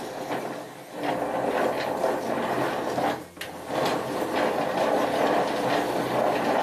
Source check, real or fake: real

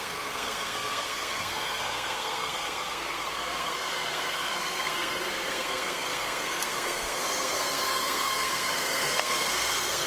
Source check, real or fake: fake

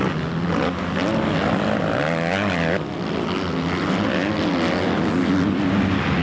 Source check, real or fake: real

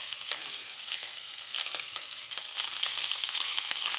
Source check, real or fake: fake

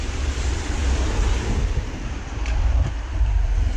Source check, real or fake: fake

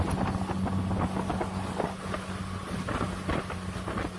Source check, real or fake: real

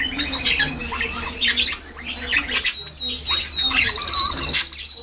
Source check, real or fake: real